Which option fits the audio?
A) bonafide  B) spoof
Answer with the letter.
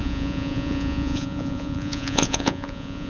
B